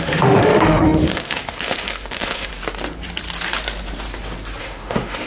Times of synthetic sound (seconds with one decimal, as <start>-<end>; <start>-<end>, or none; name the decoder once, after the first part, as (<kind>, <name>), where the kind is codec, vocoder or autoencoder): 0.0-2.5 (autoencoder, DAC-VAE); 4.6-5.3